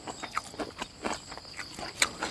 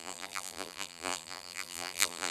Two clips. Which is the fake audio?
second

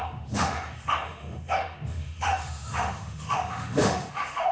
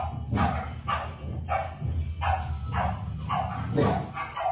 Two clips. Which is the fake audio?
first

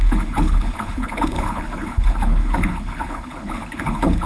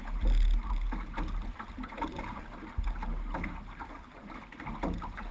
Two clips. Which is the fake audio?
first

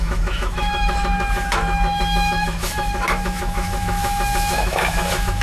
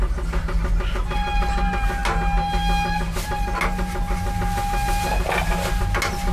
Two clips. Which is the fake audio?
first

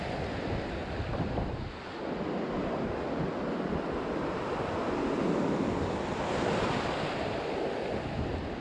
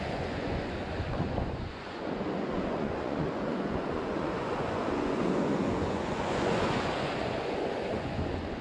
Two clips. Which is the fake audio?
second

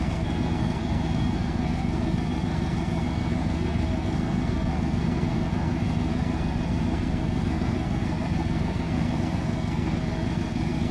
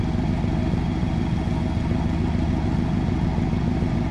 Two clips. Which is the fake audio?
first